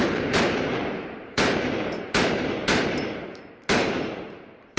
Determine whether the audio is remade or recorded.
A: remade